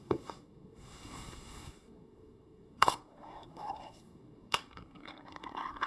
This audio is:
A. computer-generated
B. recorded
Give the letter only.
A